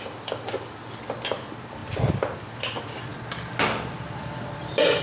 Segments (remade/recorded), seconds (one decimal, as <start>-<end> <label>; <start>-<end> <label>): 0.0-1.8 remade; 1.8-2.4 recorded; 2.4-3.1 remade; 3.1-3.9 recorded; 3.9-5.0 remade